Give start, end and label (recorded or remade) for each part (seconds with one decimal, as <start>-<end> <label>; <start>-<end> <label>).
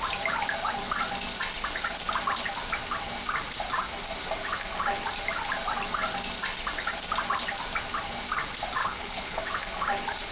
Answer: 0.0-8.8 recorded; 8.8-9.4 remade; 9.4-10.3 recorded